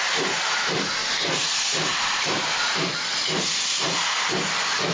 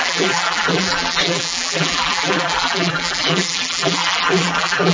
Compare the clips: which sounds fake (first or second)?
second